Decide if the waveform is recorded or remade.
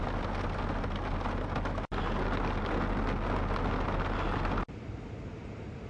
recorded